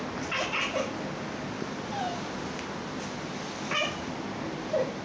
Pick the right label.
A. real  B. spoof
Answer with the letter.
A